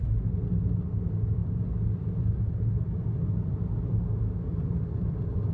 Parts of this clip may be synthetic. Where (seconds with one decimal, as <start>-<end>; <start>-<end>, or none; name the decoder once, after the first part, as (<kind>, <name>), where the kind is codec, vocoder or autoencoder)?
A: none